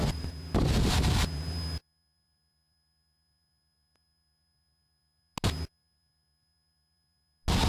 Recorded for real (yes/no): yes